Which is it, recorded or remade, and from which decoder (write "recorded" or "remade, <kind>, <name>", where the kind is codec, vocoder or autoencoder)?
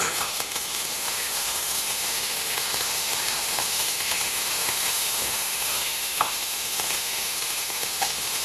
remade, autoencoder, DAC-VAE